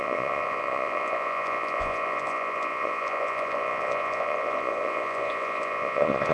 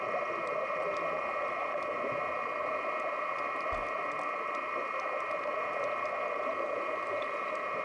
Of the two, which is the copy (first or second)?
first